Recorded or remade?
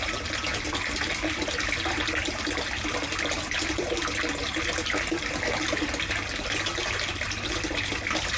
recorded